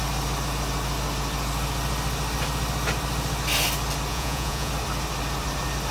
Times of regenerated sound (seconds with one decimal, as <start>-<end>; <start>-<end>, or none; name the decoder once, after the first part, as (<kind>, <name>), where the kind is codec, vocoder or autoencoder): 4.1-4.7 (vocoder, Vocos)